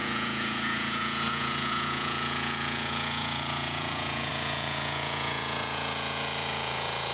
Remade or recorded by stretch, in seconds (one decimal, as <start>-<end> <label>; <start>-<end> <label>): 0.0-7.1 remade